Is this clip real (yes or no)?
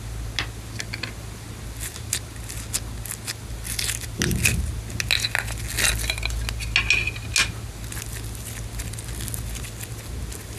yes